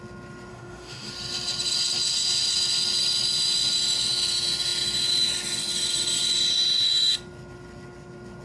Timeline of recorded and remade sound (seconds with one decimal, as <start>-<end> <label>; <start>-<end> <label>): 0.0-0.5 recorded; 0.5-1.1 remade; 1.1-8.4 recorded